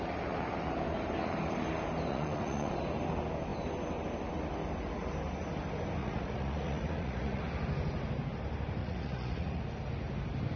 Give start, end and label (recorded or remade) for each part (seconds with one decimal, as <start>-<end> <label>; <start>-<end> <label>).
0.0-2.1 recorded; 2.1-2.7 remade; 2.7-6.0 recorded; 6.0-7.4 remade; 7.4-8.8 recorded; 8.8-9.6 remade; 9.6-10.6 recorded